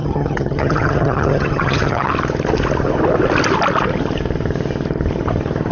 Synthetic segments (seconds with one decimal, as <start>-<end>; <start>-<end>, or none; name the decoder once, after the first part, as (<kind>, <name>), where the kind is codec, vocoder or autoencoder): 0.0-2.1 (vocoder, HiFi-GAN)